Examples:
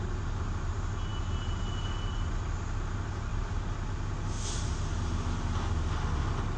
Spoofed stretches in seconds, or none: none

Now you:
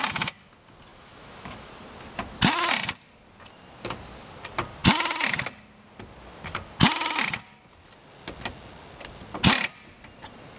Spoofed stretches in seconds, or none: 0.9-1.7 (autoencoder, DAC-VAE)

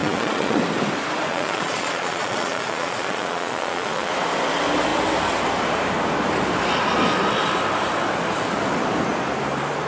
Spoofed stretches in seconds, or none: 0.0-0.6 (vocoder, Vocos); 1.3-4.1